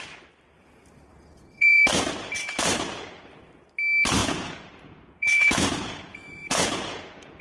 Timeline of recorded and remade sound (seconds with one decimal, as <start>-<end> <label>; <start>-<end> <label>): 0.0-1.1 recorded; 1.1-1.9 remade; 1.9-4.2 recorded; 4.2-7.4 remade